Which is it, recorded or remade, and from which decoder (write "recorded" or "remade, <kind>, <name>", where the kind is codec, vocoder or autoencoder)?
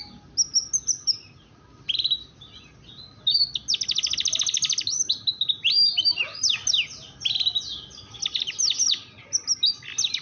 recorded